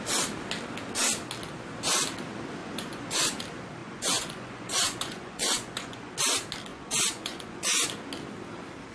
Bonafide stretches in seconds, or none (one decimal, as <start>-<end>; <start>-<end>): 0.0-2.6; 3.4-3.8; 6.1-6.7; 7.9-8.9